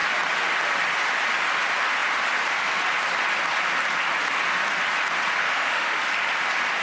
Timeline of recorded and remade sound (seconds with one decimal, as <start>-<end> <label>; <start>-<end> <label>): 0.0-5.4 recorded; 5.4-6.0 remade; 6.0-6.8 recorded